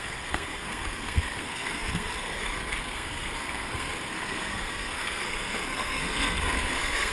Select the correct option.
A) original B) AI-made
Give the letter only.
B